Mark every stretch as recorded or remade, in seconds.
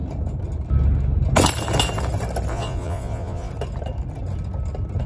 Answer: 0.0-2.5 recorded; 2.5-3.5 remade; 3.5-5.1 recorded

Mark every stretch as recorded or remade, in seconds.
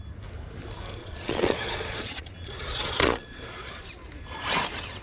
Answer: 0.0-1.0 recorded; 1.0-3.8 remade; 3.8-5.0 recorded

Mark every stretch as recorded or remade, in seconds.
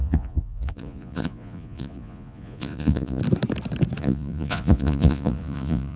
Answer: 0.0-3.2 remade; 3.2-4.0 recorded; 4.0-6.0 remade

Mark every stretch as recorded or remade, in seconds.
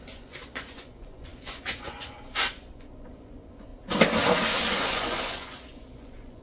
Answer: 0.0-3.7 remade; 3.7-4.6 recorded; 4.6-6.4 remade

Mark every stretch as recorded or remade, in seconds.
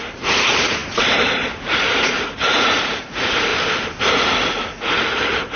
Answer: 0.0-3.5 remade; 3.5-4.1 recorded; 4.1-5.6 remade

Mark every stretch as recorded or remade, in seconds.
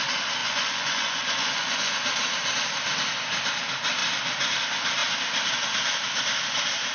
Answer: 0.0-0.4 recorded; 0.4-1.9 remade; 1.9-6.9 recorded